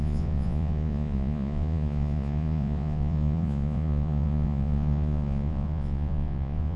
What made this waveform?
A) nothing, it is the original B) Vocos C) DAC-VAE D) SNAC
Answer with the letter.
B